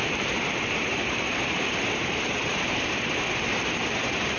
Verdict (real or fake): fake